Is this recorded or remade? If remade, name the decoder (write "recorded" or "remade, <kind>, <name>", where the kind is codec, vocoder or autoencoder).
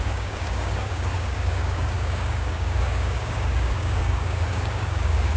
remade, codec, DAC